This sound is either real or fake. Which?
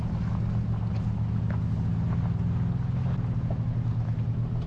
real